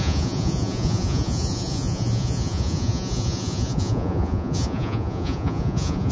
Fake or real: fake